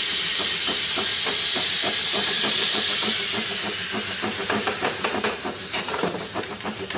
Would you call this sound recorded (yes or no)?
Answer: no